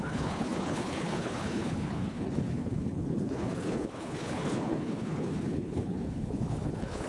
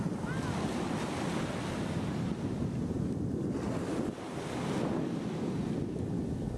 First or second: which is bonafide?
second